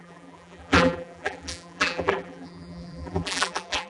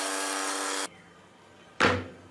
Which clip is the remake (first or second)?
first